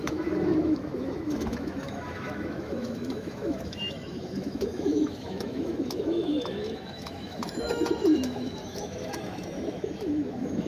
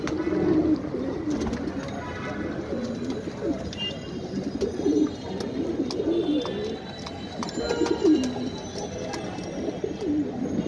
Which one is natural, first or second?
second